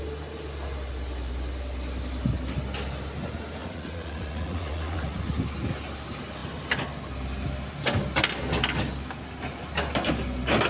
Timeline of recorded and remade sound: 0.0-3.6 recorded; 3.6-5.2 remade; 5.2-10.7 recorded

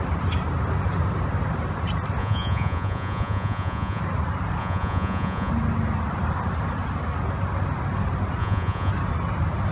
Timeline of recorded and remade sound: 0.0-2.2 recorded; 2.2-4.0 remade; 4.0-4.6 recorded; 4.6-5.5 remade; 5.5-8.4 recorded; 8.4-8.9 remade; 8.9-9.7 recorded

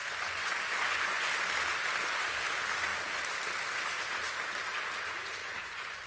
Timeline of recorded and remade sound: 0.0-1.3 remade; 1.3-5.4 recorded; 5.4-6.1 remade

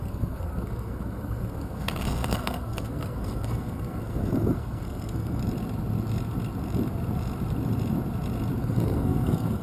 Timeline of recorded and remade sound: 0.0-5.4 remade; 5.4-8.6 recorded; 8.6-9.6 remade

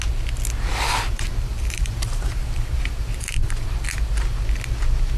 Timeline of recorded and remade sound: 0.0-0.7 recorded; 0.7-3.8 remade; 3.8-5.2 recorded